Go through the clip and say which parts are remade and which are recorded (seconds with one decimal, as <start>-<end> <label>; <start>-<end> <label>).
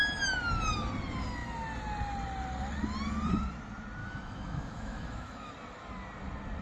0.0-4.0 recorded; 4.0-5.5 remade; 5.5-6.6 recorded